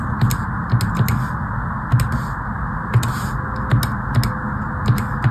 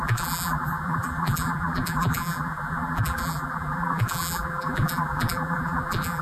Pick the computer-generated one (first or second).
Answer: second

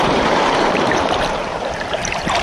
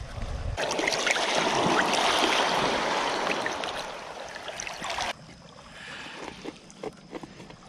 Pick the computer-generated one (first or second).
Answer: first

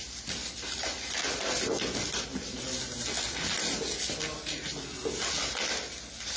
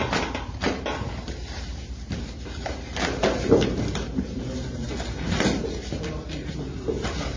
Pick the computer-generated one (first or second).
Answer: second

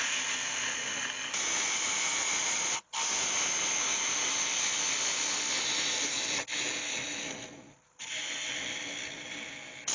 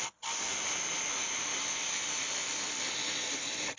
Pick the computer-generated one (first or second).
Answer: second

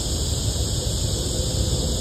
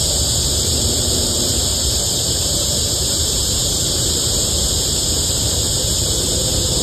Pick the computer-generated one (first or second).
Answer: second